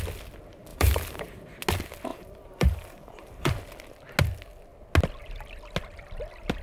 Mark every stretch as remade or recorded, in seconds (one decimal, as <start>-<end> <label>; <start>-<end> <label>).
0.0-0.7 recorded; 0.7-1.6 remade; 1.6-2.1 recorded; 2.1-3.6 remade; 3.6-6.6 recorded